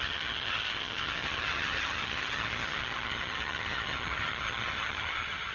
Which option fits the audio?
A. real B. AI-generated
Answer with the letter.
B